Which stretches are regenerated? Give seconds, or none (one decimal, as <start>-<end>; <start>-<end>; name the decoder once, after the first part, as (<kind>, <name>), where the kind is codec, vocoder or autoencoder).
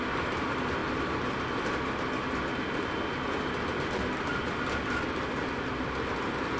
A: none